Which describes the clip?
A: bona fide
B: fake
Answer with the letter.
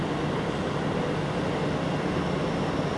A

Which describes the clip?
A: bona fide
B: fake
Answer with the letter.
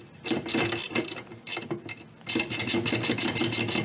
A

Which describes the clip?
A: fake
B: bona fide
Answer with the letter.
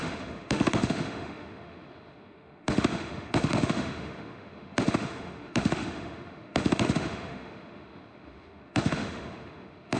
A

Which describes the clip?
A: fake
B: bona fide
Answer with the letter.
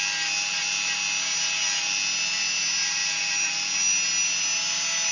B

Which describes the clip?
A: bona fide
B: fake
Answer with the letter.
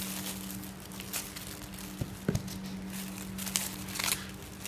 A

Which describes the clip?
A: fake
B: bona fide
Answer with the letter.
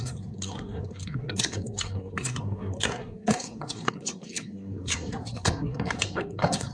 A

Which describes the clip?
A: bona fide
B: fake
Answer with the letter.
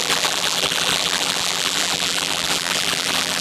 B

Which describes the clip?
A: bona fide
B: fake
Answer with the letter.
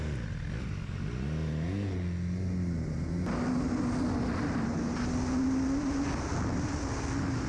A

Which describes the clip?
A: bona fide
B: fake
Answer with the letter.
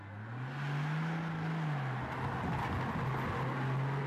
A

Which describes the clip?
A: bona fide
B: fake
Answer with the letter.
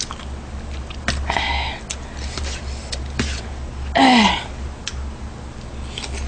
A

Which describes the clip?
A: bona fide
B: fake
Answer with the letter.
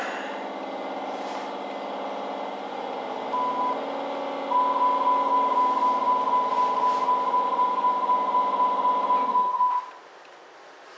A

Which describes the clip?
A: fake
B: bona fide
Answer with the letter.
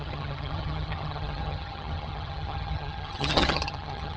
A